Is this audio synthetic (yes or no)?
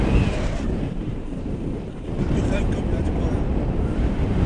yes